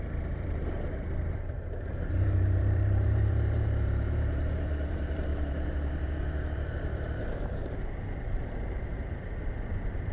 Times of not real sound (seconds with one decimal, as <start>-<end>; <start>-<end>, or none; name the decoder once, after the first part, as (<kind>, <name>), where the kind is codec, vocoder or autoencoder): 0.0-10.1 (vocoder, BigVGAN v2)